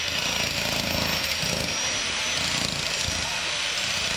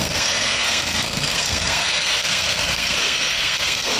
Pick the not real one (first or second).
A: second